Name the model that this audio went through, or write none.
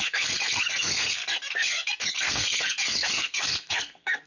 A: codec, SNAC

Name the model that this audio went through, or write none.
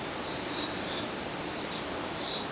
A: none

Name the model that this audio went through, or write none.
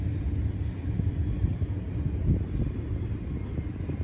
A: none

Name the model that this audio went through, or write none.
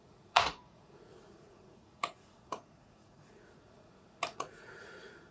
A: vocoder, Vocos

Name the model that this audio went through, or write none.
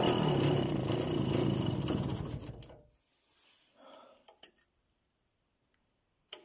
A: none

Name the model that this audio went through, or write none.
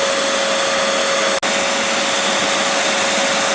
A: none